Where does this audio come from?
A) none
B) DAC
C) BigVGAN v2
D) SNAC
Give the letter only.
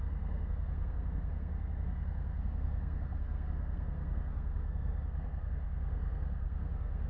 D